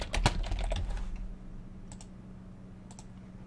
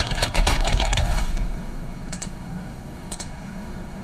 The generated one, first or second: second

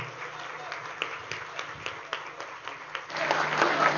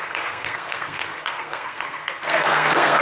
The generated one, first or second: second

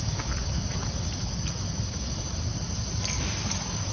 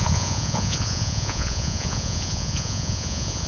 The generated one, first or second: second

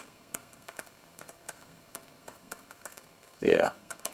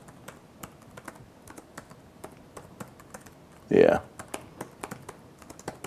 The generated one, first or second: first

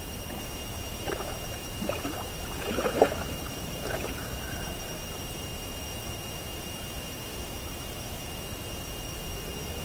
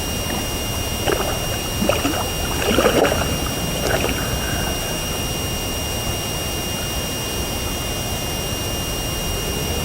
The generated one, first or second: first